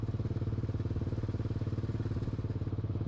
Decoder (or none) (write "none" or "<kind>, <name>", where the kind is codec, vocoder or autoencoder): none